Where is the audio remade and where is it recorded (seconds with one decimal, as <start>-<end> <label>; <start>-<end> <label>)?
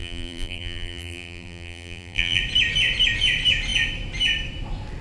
0.0-2.4 remade; 2.4-5.0 recorded